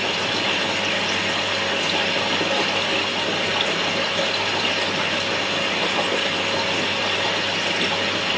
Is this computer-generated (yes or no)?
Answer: no